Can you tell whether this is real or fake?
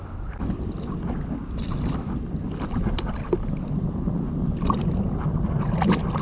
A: real